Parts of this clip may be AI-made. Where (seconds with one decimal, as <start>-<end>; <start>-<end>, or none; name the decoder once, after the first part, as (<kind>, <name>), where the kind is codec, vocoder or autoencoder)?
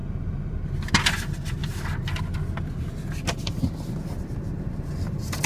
none